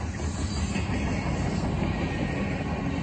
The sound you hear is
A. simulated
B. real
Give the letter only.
B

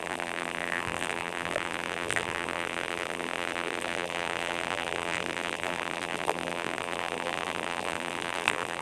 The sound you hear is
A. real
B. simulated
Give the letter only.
B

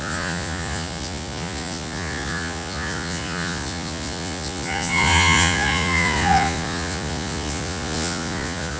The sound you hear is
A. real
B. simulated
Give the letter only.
B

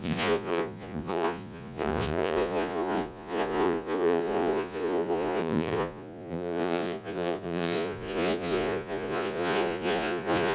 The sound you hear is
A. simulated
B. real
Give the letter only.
A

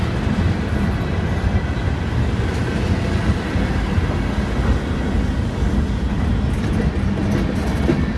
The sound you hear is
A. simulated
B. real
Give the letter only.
B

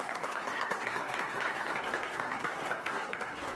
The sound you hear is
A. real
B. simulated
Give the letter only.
B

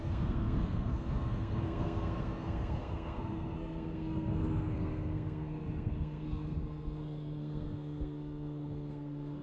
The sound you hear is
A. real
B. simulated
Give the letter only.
B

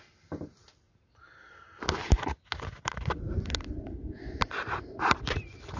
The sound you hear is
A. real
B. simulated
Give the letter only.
A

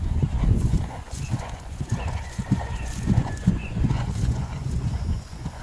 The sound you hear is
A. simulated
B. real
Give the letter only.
A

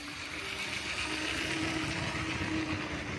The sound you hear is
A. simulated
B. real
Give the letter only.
B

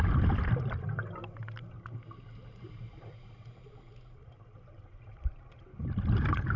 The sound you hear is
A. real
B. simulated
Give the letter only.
A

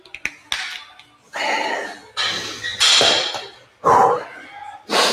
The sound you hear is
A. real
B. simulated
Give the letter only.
A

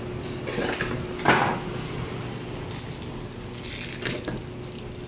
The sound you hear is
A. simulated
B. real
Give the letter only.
B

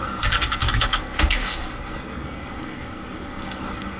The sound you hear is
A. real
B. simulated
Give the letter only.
B